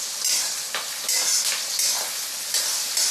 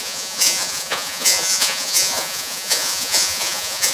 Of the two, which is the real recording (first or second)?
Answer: first